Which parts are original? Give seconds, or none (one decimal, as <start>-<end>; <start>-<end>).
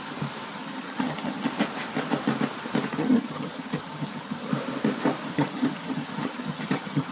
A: 0.0-0.5; 1.5-2.9; 4.5-5.3